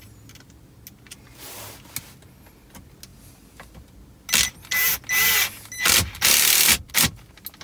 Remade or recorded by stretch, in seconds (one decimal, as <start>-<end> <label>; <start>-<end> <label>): 0.0-7.6 recorded